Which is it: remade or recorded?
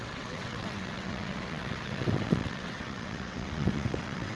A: remade